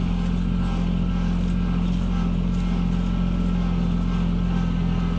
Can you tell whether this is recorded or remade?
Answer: recorded